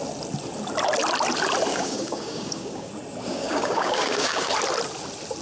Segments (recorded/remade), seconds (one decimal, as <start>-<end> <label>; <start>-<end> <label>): 0.0-1.7 recorded; 1.7-2.9 remade; 2.9-3.3 recorded; 3.3-4.5 remade; 4.5-5.4 recorded